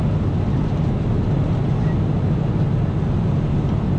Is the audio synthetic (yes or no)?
no